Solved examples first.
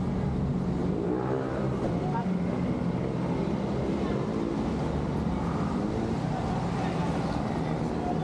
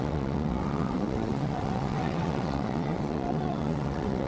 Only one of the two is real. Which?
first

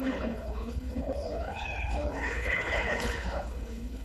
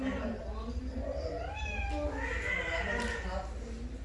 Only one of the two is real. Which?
second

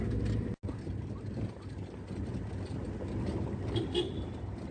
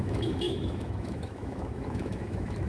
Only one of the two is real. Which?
first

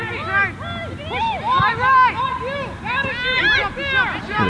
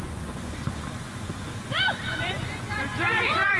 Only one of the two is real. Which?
first